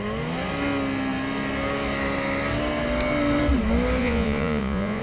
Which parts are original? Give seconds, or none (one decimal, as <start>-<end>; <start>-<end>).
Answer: 0.0-4.0